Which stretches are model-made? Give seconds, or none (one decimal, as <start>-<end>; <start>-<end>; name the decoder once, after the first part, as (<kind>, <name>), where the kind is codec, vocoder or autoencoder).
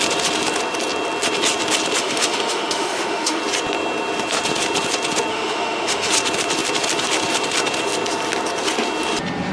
2.0-3.4 (autoencoder, DAC-VAE); 5.3-6.1